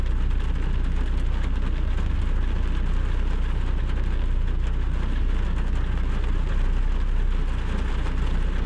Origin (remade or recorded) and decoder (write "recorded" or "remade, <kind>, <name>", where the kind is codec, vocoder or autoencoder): recorded